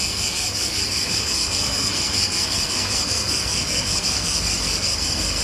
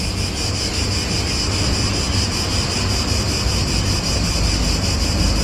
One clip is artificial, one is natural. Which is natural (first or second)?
second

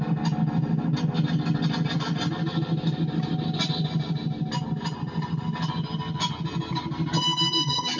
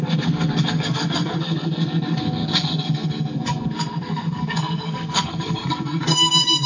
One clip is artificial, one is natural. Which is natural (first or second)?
first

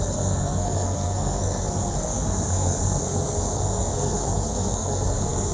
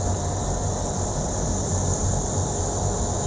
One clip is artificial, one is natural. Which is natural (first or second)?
second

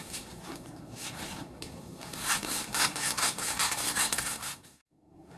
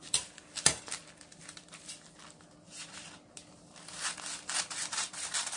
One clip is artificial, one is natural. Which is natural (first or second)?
second